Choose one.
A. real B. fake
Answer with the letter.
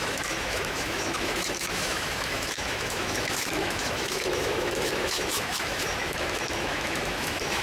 B